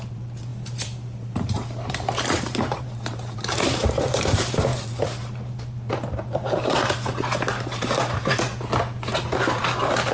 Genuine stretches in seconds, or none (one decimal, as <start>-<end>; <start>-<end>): 8.3-9.6